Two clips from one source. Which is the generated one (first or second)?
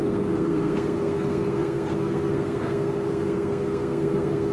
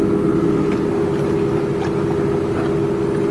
first